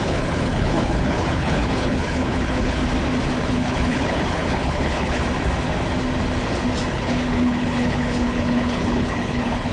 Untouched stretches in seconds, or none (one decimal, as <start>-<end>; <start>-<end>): 2.8-3.4; 5.2-6.9